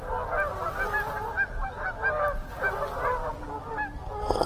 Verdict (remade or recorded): recorded